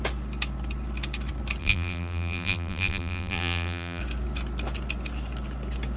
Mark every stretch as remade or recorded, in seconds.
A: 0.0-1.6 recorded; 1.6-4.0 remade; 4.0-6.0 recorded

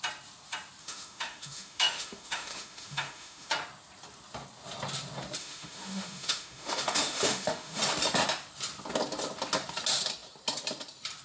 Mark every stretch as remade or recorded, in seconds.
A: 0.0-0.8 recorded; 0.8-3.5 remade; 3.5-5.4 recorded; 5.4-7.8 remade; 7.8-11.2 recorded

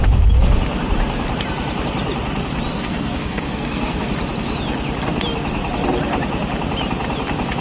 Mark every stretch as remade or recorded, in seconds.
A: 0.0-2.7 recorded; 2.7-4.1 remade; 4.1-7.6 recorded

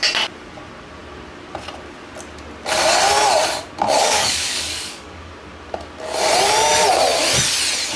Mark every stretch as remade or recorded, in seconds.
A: 0.0-4.0 recorded; 4.0-5.3 remade; 5.3-8.0 recorded

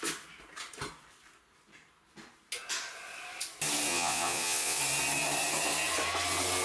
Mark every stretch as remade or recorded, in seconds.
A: 0.0-3.9 recorded; 3.9-4.8 remade; 4.8-6.6 recorded